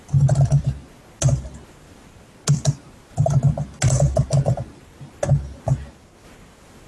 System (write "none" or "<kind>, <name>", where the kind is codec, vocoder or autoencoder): none